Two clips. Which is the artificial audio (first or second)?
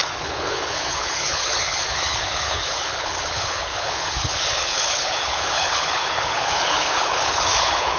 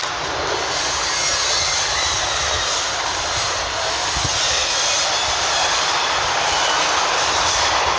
first